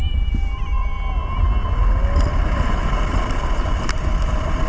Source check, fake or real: real